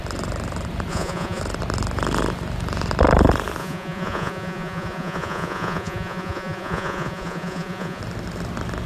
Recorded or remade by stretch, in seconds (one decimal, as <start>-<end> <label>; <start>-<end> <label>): 0.0-0.9 recorded; 0.9-1.4 remade; 1.4-3.6 recorded; 3.6-8.0 remade; 8.0-8.9 recorded